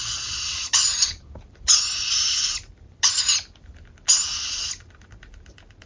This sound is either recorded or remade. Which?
recorded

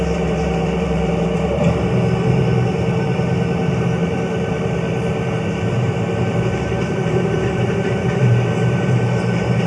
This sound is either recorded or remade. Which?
remade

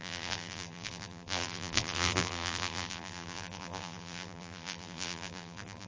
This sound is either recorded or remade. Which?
remade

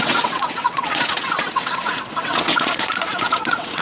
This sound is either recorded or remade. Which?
remade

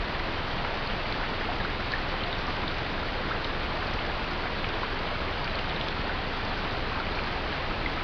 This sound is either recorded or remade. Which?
recorded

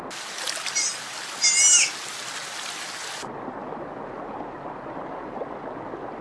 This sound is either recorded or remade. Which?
recorded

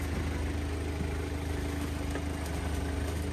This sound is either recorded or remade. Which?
recorded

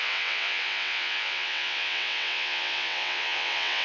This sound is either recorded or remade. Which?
remade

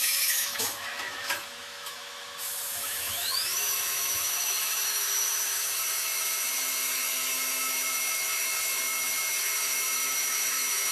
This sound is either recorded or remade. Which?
remade